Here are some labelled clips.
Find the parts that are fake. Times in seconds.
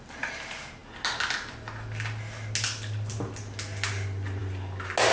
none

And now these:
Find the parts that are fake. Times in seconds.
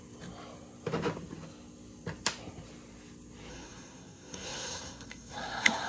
3.5-5.9 (codec, SNAC)